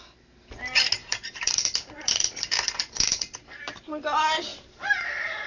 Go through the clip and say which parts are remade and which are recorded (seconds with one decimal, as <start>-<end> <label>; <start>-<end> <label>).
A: 0.0-1.0 recorded; 1.0-4.0 remade; 4.0-4.5 recorded; 4.5-5.5 remade